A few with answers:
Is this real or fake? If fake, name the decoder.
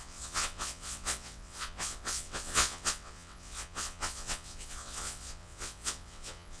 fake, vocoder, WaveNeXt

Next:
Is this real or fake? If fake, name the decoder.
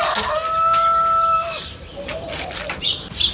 real